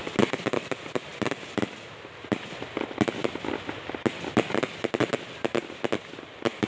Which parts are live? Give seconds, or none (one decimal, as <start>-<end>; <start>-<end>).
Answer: 0.0-6.7